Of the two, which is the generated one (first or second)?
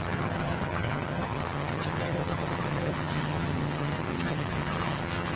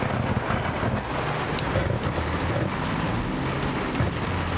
first